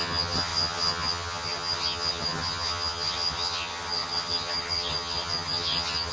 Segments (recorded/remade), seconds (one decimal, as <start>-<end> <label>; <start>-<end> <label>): 0.0-6.1 remade